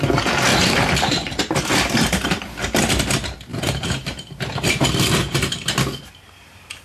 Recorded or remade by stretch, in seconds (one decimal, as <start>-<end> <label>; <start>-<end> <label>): 0.0-0.5 recorded; 0.5-1.6 remade; 1.6-3.5 recorded; 3.5-4.4 remade; 4.4-6.8 recorded